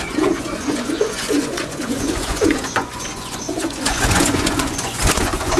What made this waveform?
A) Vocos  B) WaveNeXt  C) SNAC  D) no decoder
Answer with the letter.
A